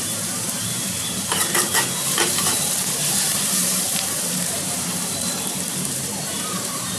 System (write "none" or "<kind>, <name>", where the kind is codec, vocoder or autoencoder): vocoder, BigVGAN v2